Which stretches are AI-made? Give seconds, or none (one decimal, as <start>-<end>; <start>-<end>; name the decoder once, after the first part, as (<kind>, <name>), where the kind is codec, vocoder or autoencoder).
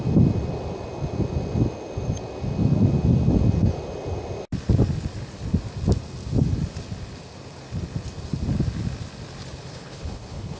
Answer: 9.7-10.6 (codec, HILCodec)